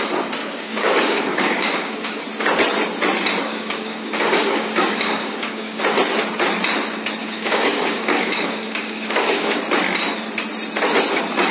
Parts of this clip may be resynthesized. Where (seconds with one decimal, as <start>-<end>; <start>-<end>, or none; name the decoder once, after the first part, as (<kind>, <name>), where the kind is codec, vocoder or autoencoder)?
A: 0.4-2.2 (codec, DAC); 3.5-5.8; 7.2-9.6